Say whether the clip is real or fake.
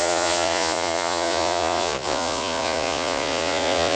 fake